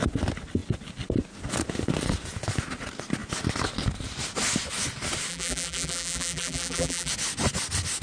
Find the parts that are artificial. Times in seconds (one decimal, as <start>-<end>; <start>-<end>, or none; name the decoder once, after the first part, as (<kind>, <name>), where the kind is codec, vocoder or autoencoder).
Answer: 5.3-7.1 (vocoder, BigVGAN v2)

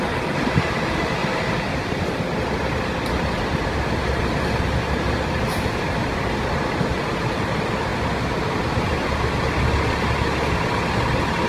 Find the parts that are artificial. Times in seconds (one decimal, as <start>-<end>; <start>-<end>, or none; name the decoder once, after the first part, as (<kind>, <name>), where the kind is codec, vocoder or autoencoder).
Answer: none

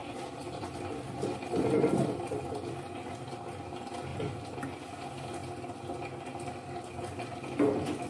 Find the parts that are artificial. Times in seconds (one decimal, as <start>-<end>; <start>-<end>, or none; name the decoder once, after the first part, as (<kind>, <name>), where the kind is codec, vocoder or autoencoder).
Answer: 0.0-2.9 (vocoder, BigVGAN v2)

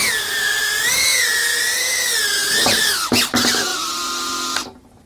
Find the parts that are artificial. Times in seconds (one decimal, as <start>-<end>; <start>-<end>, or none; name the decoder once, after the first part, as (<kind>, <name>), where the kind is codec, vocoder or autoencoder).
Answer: 0.0-0.7 (vocoder, BigVGAN v2); 1.1-1.9; 2.4-2.9; 3.7-4.3

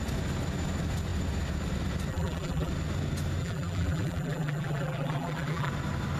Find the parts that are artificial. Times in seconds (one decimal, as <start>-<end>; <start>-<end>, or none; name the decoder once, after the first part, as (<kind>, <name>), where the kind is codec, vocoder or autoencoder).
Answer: 2.1-2.7 (vocoder, BigVGAN v2); 3.4-5.7

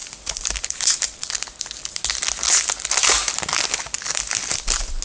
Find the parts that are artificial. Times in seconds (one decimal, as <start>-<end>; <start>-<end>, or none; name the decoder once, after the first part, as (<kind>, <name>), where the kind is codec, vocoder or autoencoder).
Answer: 0.0-1.3 (vocoder, BigVGAN v2)

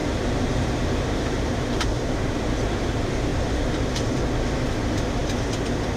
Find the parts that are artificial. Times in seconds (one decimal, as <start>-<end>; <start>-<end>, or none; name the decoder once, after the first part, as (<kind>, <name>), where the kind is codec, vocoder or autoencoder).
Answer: 0.0-2.9 (vocoder, BigVGAN v2); 3.3-4.2

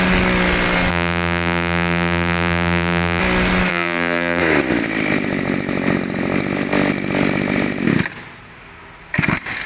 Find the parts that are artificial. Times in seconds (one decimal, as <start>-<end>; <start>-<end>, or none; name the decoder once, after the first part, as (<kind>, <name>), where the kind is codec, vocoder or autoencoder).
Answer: 0.9-3.2 (vocoder, BigVGAN v2); 3.7-4.4